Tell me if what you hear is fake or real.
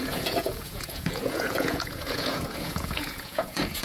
fake